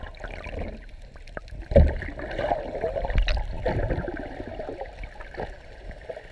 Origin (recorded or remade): recorded